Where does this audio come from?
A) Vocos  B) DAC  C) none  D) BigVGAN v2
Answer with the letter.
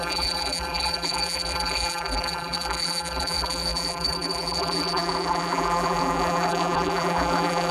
D